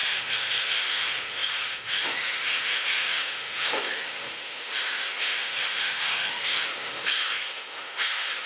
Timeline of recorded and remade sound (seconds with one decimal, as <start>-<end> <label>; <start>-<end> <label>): 0.0-8.5 remade